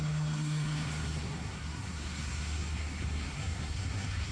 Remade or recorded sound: remade